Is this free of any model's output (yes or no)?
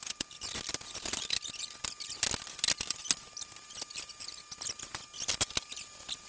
yes